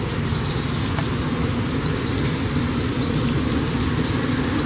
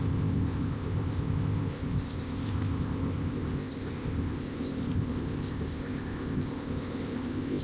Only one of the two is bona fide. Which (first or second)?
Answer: first